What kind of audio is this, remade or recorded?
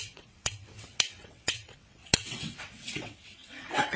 remade